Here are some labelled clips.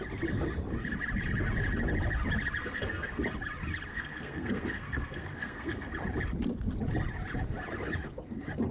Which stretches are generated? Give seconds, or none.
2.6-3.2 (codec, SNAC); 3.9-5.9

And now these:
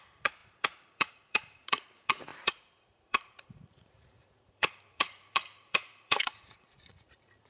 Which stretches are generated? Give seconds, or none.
0.0-7.5 (vocoder, Vocos)

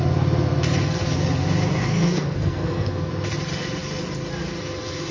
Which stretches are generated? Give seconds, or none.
1.7-3.1 (codec, SNAC)